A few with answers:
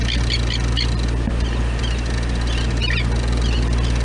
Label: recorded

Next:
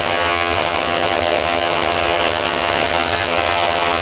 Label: remade